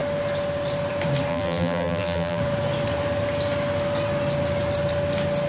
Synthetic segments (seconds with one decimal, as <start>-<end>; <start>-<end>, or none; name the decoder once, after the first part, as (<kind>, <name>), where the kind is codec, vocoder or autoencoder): 1.3-2.4 (vocoder, BigVGAN v2)